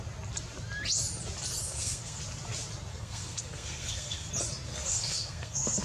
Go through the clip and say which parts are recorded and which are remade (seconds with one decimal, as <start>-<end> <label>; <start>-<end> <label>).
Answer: 0.0-1.6 recorded; 1.6-2.2 remade; 2.2-2.9 recorded; 2.9-4.3 remade; 4.3-4.7 recorded; 4.7-5.8 remade